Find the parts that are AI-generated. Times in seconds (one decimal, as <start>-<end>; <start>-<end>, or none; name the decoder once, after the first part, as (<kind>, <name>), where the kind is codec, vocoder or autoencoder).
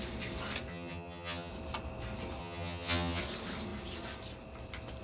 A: 0.7-1.5 (vocoder, HiFi-GAN); 2.4-3.2